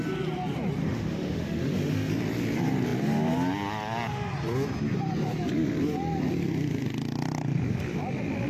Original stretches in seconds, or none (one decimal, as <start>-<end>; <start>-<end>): 0.0-0.8; 2.1-8.5